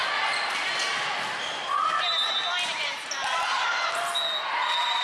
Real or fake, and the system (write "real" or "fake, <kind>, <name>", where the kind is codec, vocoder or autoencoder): real